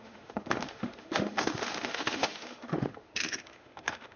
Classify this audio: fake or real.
fake